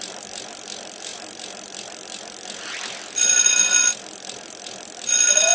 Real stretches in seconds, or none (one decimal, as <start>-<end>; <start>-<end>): 0.0-5.5